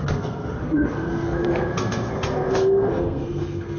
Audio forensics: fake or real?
fake